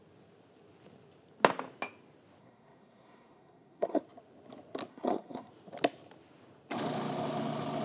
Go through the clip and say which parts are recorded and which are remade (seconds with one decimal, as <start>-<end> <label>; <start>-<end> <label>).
0.0-2.4 recorded; 2.4-4.0 remade; 4.0-4.9 recorded; 4.9-5.5 remade; 5.5-7.8 recorded